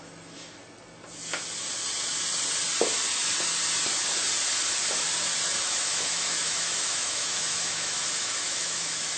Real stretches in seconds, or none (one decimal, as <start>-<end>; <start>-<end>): 0.6-5.6